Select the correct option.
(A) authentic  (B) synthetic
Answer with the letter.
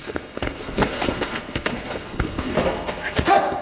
B